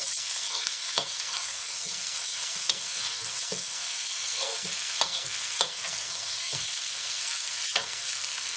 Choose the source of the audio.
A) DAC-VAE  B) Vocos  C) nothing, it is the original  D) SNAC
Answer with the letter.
D